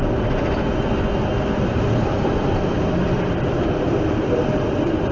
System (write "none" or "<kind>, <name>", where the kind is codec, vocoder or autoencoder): vocoder, BigVGAN v2